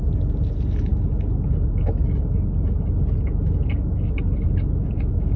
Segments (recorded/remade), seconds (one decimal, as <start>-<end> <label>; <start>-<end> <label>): 0.0-5.4 recorded

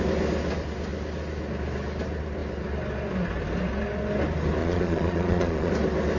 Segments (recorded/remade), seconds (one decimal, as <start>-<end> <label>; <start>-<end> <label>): 0.0-4.6 recorded; 4.6-5.7 remade; 5.7-6.2 recorded

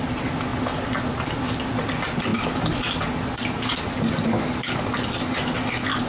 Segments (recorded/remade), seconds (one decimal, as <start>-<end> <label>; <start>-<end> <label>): 0.0-2.3 recorded; 2.3-3.0 remade; 3.0-6.1 recorded